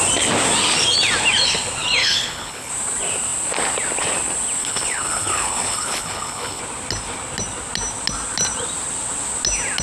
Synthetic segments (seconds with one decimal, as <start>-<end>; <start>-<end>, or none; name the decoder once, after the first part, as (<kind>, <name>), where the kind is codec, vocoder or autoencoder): 2.0-2.7 (codec, HILCodec); 4.6-6.6